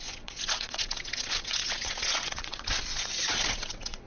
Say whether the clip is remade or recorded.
remade